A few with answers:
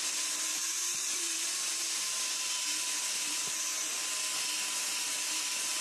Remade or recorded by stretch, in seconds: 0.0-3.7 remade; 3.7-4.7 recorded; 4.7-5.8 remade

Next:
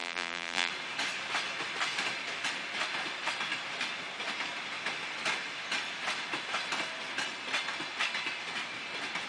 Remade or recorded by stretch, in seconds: 0.0-0.7 remade; 0.7-9.3 recorded

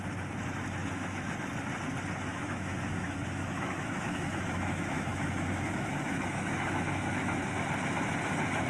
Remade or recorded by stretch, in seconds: 0.0-0.8 recorded; 0.8-1.3 remade; 1.3-2.3 recorded; 2.3-7.4 remade; 7.4-8.7 recorded